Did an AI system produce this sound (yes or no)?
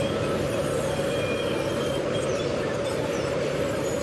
yes